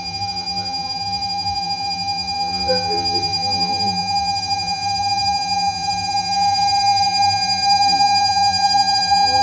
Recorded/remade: remade